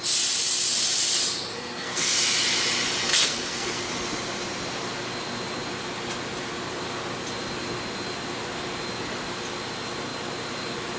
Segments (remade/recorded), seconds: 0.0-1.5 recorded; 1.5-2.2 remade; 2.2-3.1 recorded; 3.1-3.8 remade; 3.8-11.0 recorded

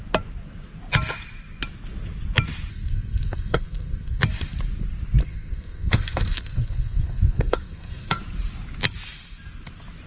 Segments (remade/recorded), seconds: 0.0-2.7 recorded; 2.7-4.2 remade; 4.2-5.2 recorded; 5.2-8.2 remade; 8.2-10.1 recorded